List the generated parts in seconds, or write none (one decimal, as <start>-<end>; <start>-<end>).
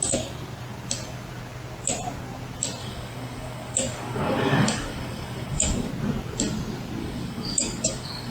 2.8-5.9; 7.0-8.3